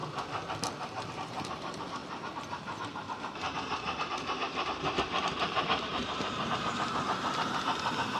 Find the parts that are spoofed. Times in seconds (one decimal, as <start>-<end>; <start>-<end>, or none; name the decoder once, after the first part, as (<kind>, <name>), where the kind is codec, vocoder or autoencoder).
1.1-8.2 (vocoder, BigVGAN v2)